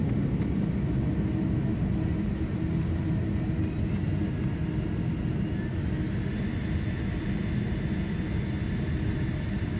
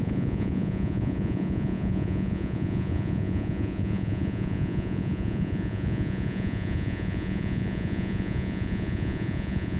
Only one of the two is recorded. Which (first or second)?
first